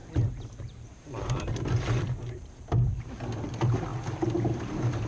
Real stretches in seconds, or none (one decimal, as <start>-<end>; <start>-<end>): 3.1-5.1